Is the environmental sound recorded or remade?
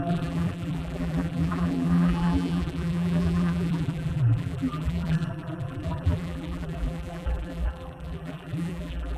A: remade